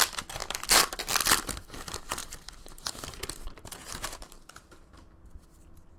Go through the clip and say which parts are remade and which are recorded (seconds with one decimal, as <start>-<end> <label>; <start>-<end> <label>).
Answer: 0.0-2.2 recorded; 2.2-4.9 remade; 4.9-6.0 recorded